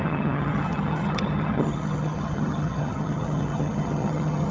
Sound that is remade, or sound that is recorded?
remade